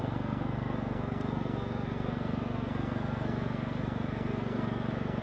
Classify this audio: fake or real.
fake